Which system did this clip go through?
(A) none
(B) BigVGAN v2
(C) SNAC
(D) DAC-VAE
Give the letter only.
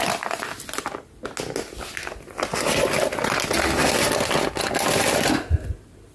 A